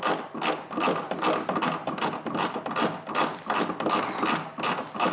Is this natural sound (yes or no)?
yes